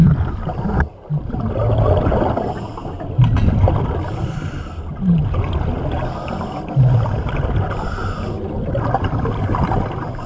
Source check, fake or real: real